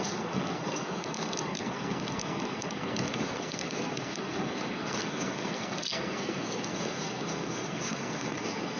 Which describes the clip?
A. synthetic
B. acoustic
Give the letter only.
A